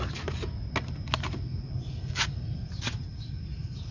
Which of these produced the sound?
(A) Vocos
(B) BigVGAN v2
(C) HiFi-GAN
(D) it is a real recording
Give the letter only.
D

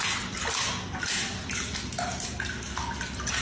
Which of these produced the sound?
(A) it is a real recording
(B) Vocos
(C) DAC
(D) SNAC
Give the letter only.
A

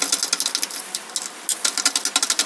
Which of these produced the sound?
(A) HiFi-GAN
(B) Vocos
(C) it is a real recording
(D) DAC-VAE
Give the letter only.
C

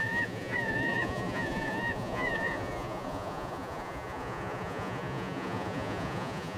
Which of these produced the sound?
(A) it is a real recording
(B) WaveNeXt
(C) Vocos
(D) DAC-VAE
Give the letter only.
C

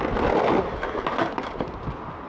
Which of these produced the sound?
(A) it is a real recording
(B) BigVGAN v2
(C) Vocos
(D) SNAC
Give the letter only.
A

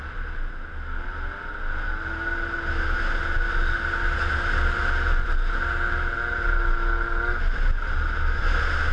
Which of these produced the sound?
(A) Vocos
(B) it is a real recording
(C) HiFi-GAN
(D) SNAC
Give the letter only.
B